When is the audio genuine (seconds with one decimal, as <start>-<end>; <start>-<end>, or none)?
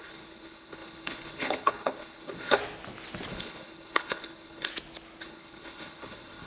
2.6-3.3; 4.7-5.2